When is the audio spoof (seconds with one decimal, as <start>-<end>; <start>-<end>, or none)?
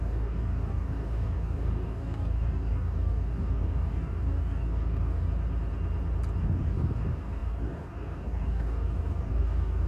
0.0-5.3; 6.4-9.9